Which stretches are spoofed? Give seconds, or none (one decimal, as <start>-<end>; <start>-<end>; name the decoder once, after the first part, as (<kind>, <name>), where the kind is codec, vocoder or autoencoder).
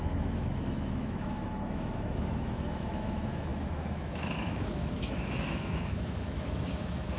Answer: 0.0-7.2 (autoencoder, DAC-VAE)